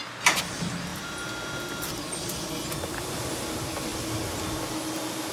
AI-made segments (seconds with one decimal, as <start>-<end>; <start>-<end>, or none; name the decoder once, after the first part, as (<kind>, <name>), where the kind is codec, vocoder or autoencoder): none